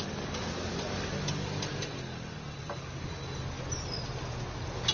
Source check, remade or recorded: recorded